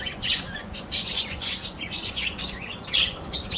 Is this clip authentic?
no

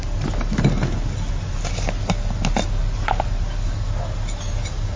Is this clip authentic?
yes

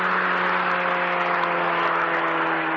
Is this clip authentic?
yes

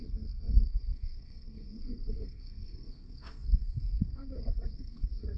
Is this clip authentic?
no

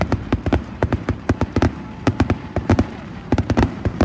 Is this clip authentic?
no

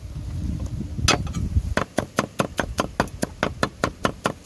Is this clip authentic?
yes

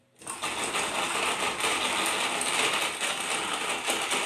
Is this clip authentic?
yes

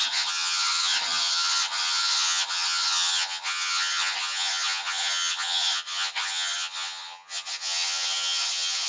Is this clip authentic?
no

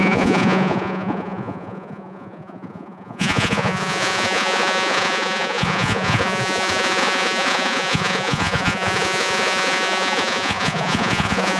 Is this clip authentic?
no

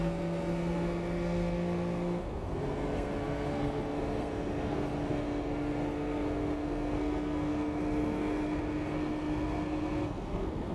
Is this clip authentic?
no